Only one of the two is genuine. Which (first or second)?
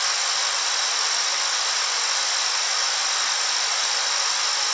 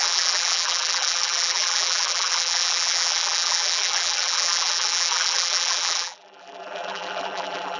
first